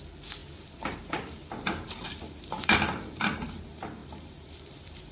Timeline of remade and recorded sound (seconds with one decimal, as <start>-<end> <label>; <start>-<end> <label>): 0.0-0.4 recorded; 0.4-3.5 remade; 3.5-4.0 recorded; 4.0-5.1 remade